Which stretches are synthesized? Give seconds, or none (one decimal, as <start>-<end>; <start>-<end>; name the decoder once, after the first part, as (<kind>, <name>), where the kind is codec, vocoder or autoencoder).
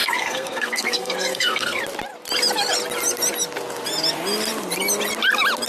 0.0-1.8 (codec, SNAC)